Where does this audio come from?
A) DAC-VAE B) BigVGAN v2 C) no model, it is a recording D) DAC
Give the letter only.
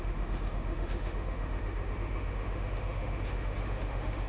A